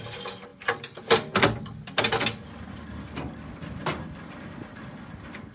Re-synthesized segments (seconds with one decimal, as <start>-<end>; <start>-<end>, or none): none